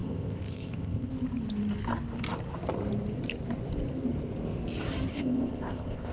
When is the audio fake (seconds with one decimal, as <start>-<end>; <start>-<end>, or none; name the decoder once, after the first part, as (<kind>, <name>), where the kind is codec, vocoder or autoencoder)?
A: 0.0-1.1 (codec, ZipCodec); 5.1-6.1